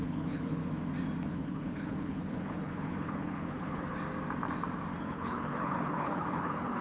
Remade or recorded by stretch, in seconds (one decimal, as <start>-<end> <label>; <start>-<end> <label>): 0.0-0.6 remade; 0.6-1.3 recorded; 1.3-3.9 remade; 3.9-5.0 recorded; 5.0-6.8 remade

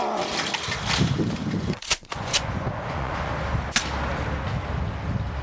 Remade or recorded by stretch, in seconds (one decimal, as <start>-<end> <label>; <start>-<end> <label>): 0.0-1.4 recorded; 1.4-3.3 remade; 3.3-5.4 recorded

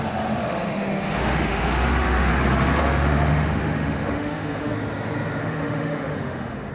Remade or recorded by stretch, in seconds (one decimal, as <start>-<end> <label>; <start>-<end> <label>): 0.0-0.4 recorded; 0.4-2.3 remade; 2.3-2.8 recorded; 2.8-4.7 remade; 4.7-5.4 recorded; 5.4-6.7 remade

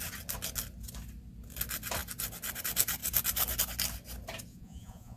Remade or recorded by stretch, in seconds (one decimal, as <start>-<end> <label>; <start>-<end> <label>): 0.0-4.5 recorded; 4.5-5.2 remade